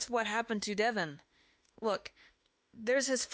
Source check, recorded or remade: remade